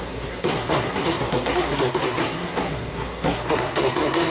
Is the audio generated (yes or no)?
yes